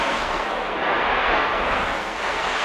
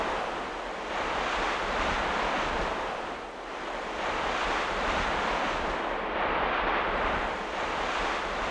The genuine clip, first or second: second